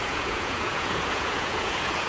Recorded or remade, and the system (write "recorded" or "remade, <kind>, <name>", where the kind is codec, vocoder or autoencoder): remade, vocoder, Vocos